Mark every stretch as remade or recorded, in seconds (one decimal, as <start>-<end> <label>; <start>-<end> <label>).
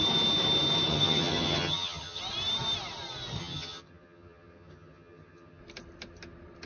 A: 0.0-0.9 recorded; 0.9-2.2 remade; 2.2-3.4 recorded; 3.4-5.6 remade; 5.6-6.7 recorded